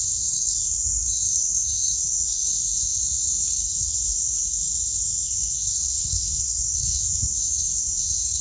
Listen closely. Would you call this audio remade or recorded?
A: remade